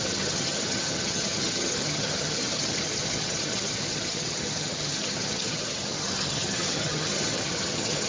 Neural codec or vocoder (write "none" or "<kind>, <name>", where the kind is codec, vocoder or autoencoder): vocoder, HiFi-GAN